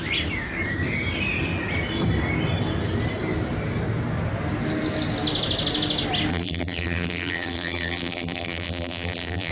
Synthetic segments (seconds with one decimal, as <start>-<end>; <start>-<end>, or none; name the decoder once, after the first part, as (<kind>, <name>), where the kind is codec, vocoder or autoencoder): 6.3-9.5 (vocoder, BigVGAN v2)